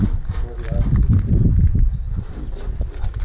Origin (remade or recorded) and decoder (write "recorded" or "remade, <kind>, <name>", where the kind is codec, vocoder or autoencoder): recorded